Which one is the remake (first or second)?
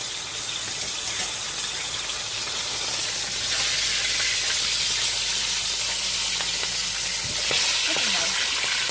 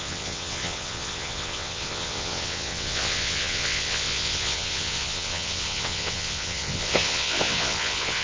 second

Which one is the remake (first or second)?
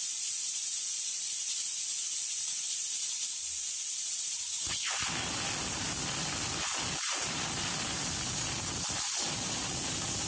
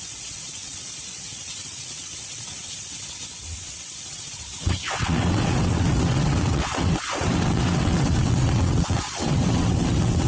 second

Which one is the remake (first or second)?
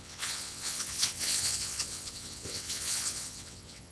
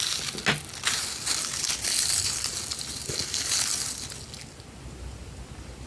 first